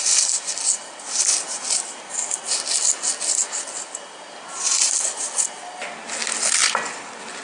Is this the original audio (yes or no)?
yes